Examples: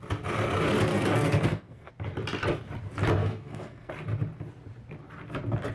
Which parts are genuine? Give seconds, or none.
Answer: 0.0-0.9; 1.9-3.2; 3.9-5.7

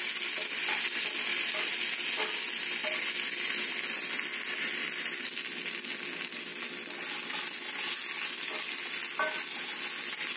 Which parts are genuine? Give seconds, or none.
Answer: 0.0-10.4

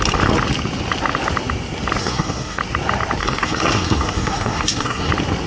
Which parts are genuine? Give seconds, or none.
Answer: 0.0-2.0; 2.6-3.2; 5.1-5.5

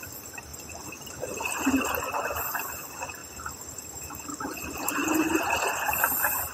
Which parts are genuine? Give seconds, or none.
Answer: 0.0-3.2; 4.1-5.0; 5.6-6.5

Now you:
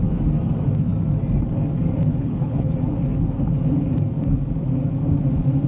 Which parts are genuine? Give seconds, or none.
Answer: 0.0-2.1; 2.7-5.7

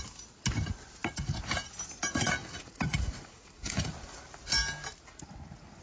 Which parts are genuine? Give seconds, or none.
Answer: 0.0-2.4; 3.9-5.8